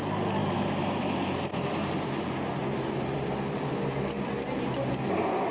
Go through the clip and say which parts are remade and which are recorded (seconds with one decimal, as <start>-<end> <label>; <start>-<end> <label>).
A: 0.0-5.5 recorded